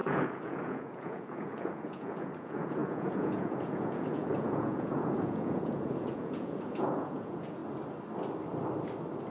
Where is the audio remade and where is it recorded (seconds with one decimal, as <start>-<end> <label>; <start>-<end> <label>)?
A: 0.0-7.6 remade; 7.6-9.3 recorded

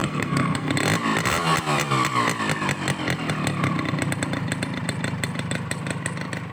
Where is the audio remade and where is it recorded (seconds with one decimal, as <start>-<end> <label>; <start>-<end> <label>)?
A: 0.0-0.7 remade; 0.7-6.5 recorded

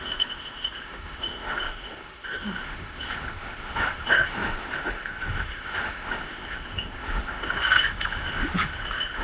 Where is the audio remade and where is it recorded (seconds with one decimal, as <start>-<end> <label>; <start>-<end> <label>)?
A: 0.0-9.2 remade

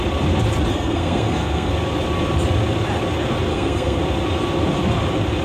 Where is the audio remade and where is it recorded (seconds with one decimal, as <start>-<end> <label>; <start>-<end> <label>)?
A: 0.0-0.7 recorded; 0.7-1.7 remade; 1.7-3.5 recorded; 3.5-4.0 remade; 4.0-5.4 recorded

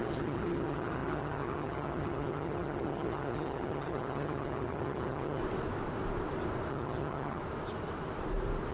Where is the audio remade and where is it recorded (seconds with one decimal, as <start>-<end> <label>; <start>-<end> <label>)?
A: 0.0-5.4 remade; 5.4-6.7 recorded; 6.7-7.4 remade; 7.4-8.7 recorded

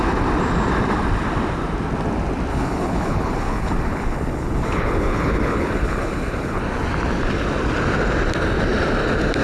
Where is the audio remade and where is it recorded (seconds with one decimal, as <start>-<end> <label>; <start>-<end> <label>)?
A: 0.0-2.5 recorded; 2.5-6.6 remade; 6.6-9.4 recorded

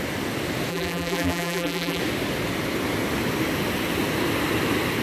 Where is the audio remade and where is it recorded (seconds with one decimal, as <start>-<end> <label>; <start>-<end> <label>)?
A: 0.0-0.7 recorded; 0.7-2.0 remade; 2.0-5.0 recorded

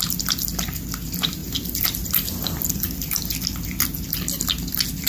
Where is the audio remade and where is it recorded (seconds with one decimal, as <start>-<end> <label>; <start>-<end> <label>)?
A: 0.0-1.4 recorded; 1.4-3.2 remade; 3.2-5.1 recorded